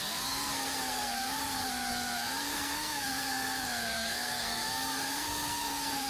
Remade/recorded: remade